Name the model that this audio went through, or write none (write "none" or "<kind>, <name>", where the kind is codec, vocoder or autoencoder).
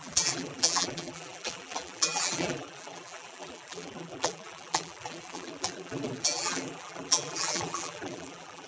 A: vocoder, BigVGAN v2